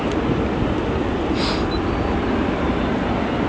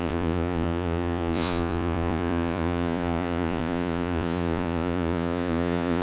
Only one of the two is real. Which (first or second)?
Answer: first